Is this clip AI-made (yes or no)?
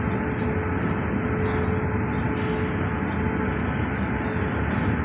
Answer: no